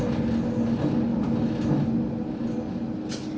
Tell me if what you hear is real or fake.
real